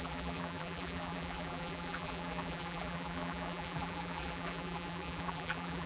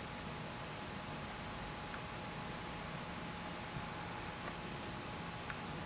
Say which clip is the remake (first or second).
first